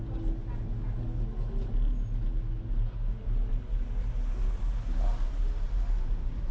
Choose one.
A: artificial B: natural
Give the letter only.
B